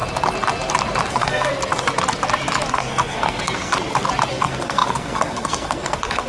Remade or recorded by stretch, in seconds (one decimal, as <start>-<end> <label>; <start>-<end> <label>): 0.0-1.1 recorded; 1.1-1.5 remade; 1.5-2.7 recorded; 2.7-3.7 remade; 3.7-4.3 recorded; 4.3-6.3 remade